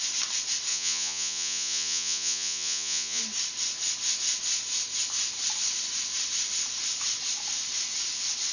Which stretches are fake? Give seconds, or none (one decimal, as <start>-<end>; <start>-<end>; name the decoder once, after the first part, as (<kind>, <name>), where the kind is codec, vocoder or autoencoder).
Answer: 0.7-3.2 (vocoder, Vocos)